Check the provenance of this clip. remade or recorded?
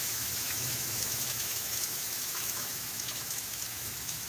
remade